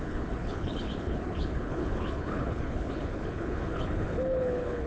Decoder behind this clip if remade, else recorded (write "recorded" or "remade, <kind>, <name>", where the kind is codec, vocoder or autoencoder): remade, codec, HILCodec